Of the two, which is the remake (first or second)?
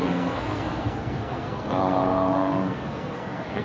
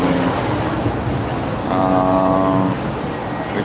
first